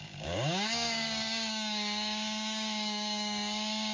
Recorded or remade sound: remade